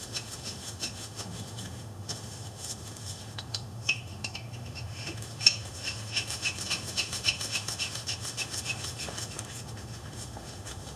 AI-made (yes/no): yes